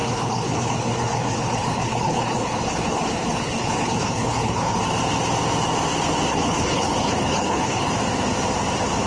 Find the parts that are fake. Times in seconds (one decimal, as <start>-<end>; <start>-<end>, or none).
0.0-4.8; 6.3-7.9